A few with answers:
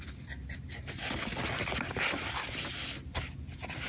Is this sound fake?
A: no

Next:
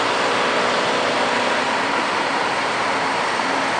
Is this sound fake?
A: no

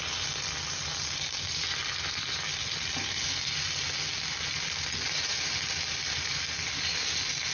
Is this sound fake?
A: no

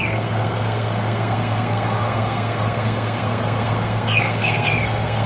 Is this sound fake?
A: yes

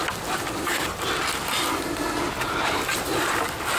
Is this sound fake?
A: no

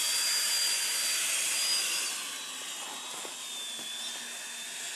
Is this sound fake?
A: no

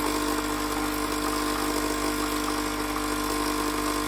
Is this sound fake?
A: no